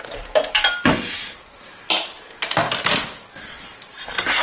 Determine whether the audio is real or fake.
real